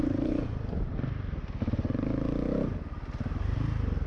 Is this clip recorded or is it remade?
recorded